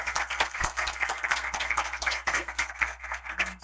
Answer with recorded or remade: remade